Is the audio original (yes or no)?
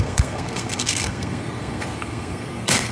no